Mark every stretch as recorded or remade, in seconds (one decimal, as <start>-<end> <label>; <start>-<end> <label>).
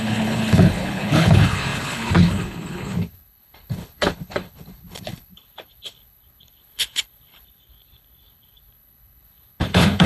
0.0-10.1 remade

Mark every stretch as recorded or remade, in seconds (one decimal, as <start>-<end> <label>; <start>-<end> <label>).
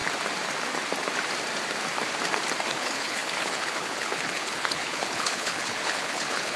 0.0-2.7 recorded; 2.7-6.6 remade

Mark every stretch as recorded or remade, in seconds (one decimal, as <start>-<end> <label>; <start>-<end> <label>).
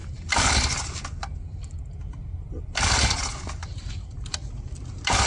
0.0-5.3 recorded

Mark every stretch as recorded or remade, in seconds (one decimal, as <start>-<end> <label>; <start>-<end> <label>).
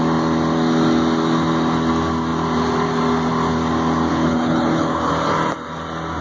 0.0-4.1 recorded; 4.1-5.1 remade; 5.1-6.2 recorded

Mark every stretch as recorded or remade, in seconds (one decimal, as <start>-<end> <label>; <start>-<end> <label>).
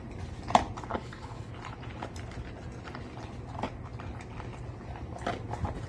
0.0-0.9 recorded; 0.9-1.5 remade; 1.5-5.9 recorded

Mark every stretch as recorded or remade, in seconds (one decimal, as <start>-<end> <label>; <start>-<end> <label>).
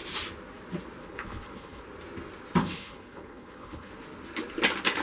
0.0-1.0 recorded; 1.0-1.8 remade; 1.8-2.6 recorded; 2.6-3.9 remade; 3.9-5.0 recorded